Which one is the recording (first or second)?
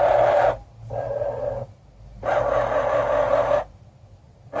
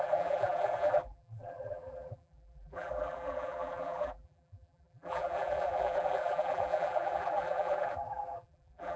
first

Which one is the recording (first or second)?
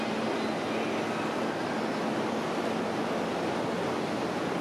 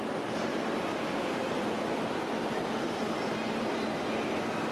first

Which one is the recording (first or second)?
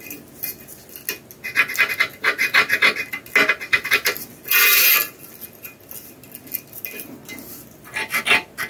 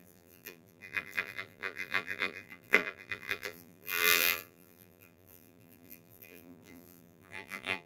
first